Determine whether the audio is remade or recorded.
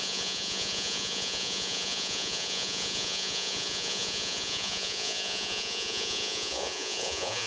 remade